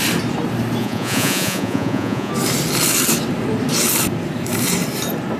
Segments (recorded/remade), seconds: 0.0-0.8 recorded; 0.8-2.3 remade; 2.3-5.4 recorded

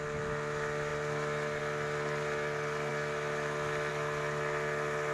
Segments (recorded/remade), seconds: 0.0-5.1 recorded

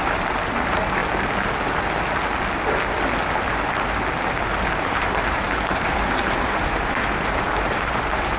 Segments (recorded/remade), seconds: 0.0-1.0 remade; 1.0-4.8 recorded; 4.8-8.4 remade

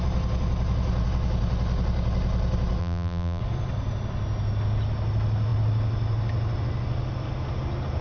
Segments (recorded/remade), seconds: 0.0-2.8 recorded; 2.8-3.4 remade; 3.4-8.0 recorded

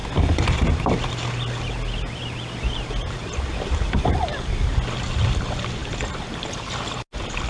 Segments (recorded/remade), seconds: 0.0-7.5 recorded